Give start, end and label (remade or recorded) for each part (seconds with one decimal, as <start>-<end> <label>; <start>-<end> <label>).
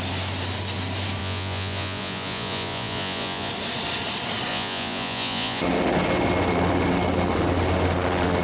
0.0-1.2 recorded; 1.2-3.5 remade; 3.5-4.5 recorded; 4.5-5.6 remade; 5.6-8.4 recorded